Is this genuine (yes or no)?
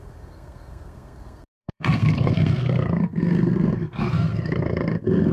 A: no